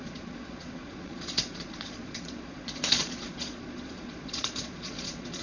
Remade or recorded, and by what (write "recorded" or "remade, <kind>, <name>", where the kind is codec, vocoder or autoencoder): remade, vocoder, Vocos